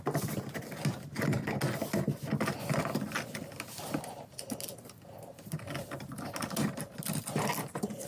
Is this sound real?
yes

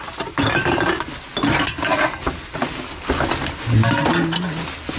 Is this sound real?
yes